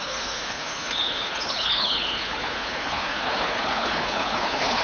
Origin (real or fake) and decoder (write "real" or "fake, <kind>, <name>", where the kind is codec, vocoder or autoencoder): fake, codec, HILCodec